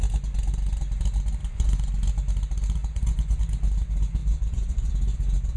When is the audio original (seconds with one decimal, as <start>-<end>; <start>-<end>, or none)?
0.0-1.4; 1.9-2.8; 3.4-4.2; 4.9-5.6